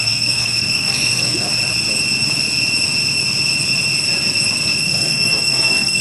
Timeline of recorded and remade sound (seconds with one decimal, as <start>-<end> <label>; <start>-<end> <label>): 0.0-1.5 remade; 1.5-4.8 recorded; 4.8-6.0 remade